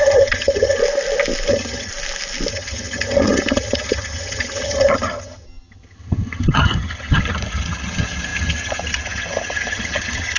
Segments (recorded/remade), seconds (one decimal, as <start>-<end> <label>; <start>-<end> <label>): 0.0-0.8 remade; 0.8-1.5 recorded; 1.5-1.9 remade; 1.9-2.5 recorded; 2.5-10.4 remade